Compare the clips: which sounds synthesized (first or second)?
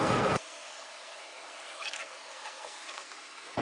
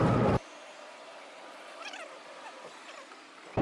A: first